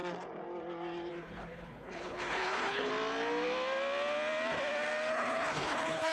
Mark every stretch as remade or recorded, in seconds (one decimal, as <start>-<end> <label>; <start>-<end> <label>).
0.0-1.1 recorded; 1.1-2.9 remade; 2.9-5.1 recorded; 5.1-6.1 remade